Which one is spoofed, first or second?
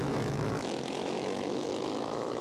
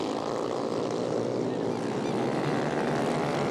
first